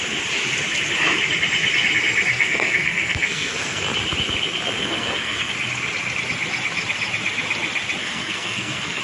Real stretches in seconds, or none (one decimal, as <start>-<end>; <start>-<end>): 0.0-2.3; 3.8-4.8; 5.5-8.0